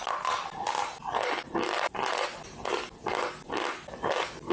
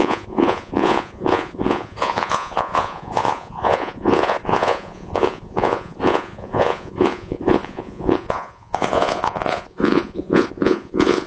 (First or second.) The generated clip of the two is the second